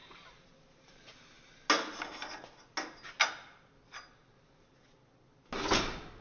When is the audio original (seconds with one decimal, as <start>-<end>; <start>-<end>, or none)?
0.0-6.2